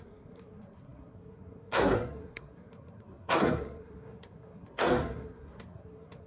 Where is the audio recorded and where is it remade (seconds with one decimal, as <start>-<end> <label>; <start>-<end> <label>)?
0.0-6.3 remade